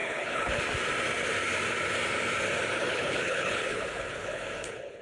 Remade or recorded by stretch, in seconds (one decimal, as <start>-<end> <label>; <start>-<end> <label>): 0.0-0.6 remade; 0.6-2.8 recorded; 2.8-5.0 remade